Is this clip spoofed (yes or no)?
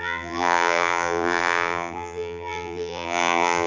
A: yes